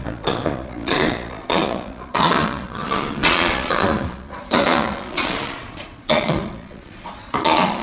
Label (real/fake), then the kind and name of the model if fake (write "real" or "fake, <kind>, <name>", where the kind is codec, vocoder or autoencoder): fake, vocoder, Vocos